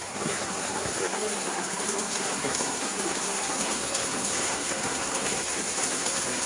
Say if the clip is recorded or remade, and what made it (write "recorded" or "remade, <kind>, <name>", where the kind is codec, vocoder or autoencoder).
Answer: remade, codec, SNAC